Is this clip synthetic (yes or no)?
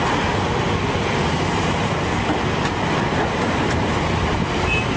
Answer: no